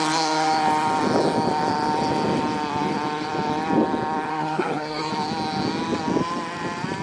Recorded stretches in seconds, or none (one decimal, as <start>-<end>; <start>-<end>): 0.0-4.3; 5.1-7.0